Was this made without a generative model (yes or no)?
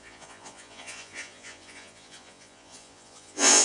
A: no